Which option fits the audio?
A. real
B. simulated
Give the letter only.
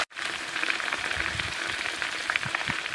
B